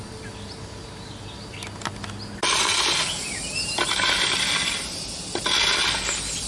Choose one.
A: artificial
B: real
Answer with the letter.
B